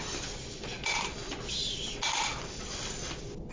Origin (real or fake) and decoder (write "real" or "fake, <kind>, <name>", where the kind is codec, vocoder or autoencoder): real